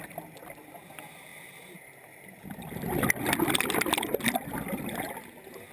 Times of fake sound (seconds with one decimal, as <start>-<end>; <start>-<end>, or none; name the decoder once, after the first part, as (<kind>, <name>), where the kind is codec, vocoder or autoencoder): none